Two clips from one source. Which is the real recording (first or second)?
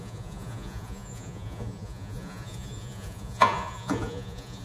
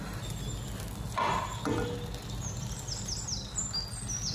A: second